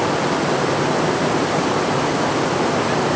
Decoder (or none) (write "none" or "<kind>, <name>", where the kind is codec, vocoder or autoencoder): none